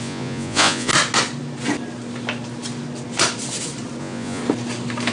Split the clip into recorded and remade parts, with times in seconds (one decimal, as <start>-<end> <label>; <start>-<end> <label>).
0.0-0.9 remade; 0.9-4.0 recorded; 4.0-4.4 remade; 4.4-5.1 recorded